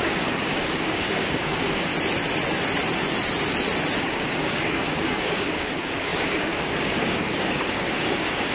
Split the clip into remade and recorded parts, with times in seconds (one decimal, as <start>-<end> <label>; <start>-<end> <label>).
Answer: 0.0-1.9 remade; 1.9-4.0 recorded; 4.0-8.5 remade